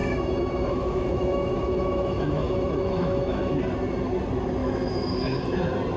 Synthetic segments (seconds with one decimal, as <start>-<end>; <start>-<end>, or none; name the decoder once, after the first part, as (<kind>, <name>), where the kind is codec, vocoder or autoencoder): 0.0-3.6 (autoencoder, DAC-VAE); 4.6-5.4